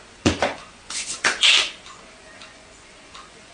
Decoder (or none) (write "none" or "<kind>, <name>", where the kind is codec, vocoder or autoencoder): vocoder, Vocos